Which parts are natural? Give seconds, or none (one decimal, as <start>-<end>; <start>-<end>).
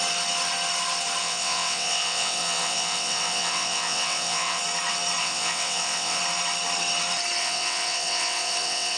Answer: 0.0-1.2; 4.6-5.2; 6.2-7.4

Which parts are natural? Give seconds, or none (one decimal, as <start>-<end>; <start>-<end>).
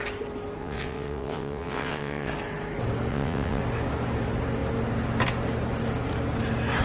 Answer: 0.0-0.6; 2.3-3.1; 3.6-6.8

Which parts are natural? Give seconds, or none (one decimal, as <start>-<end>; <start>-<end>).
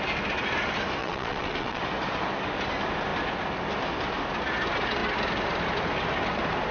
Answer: 0.0-1.0; 1.8-6.7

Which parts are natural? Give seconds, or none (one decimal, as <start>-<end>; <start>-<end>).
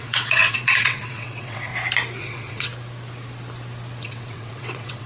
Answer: 1.7-2.2; 2.7-4.0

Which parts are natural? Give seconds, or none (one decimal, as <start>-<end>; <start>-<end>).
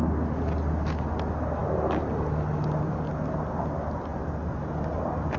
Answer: 0.0-5.4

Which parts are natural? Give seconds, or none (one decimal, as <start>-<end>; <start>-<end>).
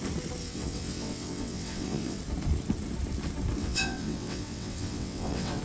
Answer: 0.0-0.4; 2.2-3.6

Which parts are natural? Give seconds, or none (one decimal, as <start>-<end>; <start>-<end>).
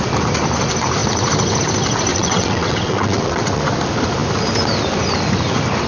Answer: 0.0-2.1; 3.6-5.9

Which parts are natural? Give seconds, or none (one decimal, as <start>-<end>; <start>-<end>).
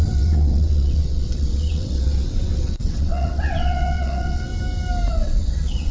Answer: 4.5-5.1